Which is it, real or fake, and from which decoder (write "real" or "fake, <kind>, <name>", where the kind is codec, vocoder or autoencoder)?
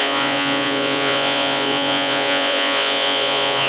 fake, vocoder, Vocos